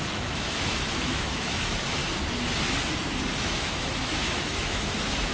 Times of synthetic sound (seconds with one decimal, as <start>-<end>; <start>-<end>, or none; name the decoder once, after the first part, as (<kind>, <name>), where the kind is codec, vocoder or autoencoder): 0.0-2.0 (autoencoder, DAC-VAE); 3.4-5.3